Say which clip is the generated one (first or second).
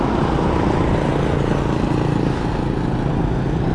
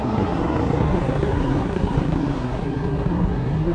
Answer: second